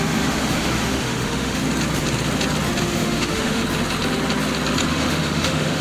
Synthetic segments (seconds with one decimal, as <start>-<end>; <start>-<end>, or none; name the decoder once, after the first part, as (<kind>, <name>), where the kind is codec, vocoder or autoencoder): 0.0-1.6 (autoencoder, DAC-VAE); 2.8-3.6; 4.9-5.8